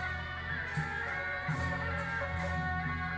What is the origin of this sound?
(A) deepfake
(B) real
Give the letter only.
B